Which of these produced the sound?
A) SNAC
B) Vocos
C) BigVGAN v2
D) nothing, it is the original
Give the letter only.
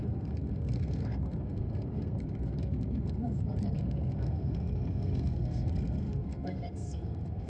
A